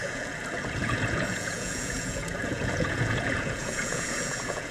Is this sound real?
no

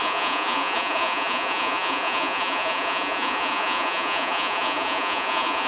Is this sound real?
no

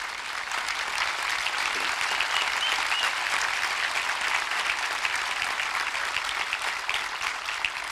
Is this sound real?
yes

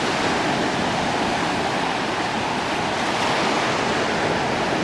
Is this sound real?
yes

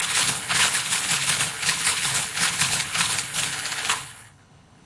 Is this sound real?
no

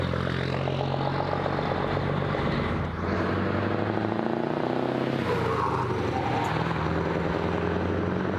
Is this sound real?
yes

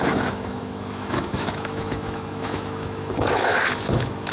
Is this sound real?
no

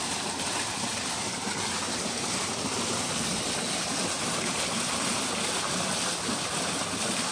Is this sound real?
yes